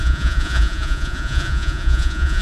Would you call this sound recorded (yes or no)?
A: no